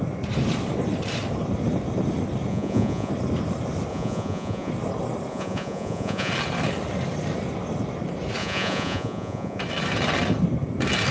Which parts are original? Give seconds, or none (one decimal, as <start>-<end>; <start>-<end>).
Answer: 0.0-2.5; 3.1-3.9; 4.7-5.3; 6.3-8.4; 9.6-11.1